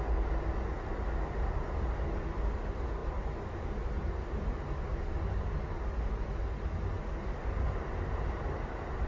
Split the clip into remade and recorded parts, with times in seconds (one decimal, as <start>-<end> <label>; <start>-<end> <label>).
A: 0.0-9.1 recorded